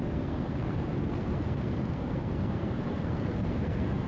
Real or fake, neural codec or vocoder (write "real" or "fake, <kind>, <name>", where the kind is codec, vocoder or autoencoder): fake, codec, SNAC